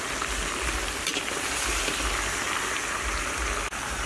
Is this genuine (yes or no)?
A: yes